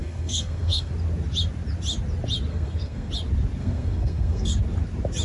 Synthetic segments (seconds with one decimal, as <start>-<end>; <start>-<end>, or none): 0.0-0.9; 2.5-3.1; 3.6-4.5